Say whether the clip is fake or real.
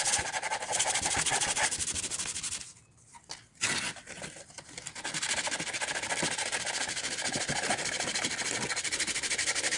real